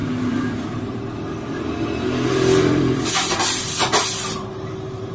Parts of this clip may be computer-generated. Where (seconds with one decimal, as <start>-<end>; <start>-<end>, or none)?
0.0-3.1